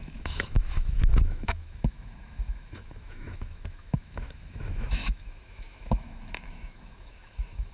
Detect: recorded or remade remade